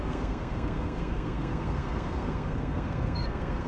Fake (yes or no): yes